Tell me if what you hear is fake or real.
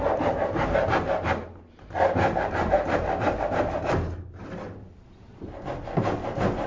real